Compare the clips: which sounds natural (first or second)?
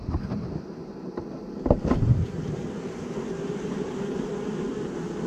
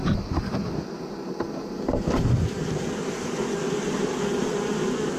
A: second